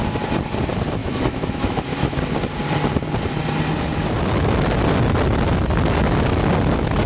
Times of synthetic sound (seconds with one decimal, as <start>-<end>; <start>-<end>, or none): 1.0-2.2